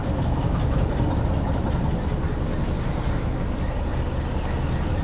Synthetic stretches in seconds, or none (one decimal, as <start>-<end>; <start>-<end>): none